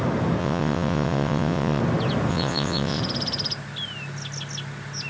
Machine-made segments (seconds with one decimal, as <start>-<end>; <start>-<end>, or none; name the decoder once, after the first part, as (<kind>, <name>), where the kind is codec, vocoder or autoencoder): 0.4-1.8 (vocoder, WaveNeXt); 2.3-3.0

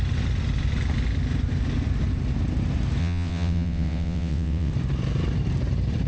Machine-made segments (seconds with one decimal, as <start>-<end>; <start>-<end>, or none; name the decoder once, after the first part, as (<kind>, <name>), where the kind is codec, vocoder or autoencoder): 3.0-4.7 (vocoder, WaveNeXt)

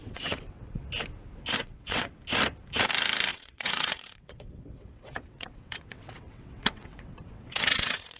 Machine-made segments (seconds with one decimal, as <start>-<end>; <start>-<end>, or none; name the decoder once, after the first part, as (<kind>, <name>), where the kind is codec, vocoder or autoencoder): 0.0-0.8 (vocoder, WaveNeXt); 1.6-2.1; 3.3-8.2